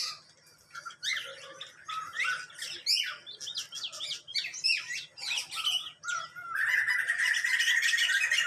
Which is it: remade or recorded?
recorded